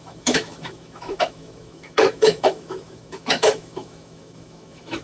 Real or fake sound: fake